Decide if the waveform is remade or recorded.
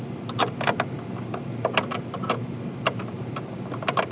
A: recorded